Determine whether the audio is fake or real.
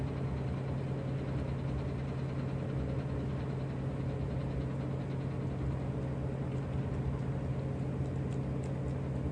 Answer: real